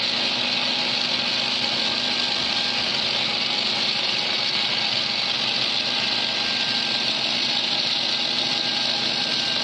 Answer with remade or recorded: recorded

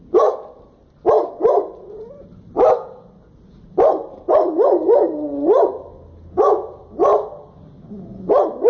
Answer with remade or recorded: recorded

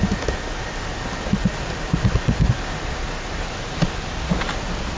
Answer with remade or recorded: recorded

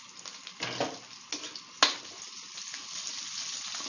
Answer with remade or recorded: recorded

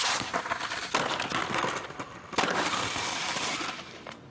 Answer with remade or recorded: recorded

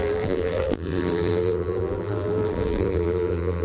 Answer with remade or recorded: remade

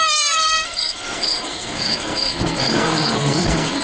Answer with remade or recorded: remade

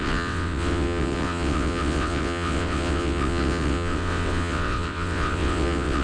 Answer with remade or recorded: remade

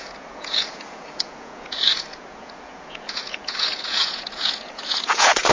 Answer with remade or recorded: remade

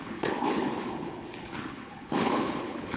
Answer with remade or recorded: remade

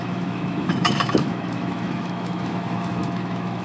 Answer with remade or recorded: remade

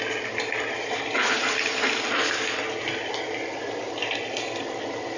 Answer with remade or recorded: recorded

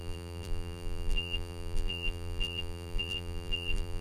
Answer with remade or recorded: remade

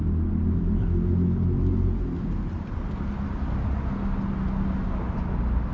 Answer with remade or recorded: recorded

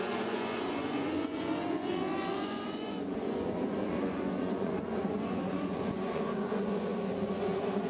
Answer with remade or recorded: remade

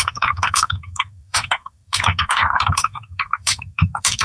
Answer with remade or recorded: remade